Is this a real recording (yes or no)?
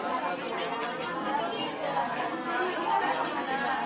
yes